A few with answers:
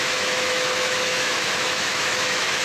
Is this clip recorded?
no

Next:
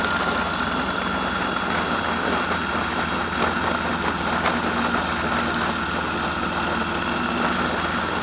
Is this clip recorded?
yes